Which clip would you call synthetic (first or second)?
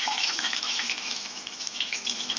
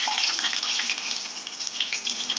first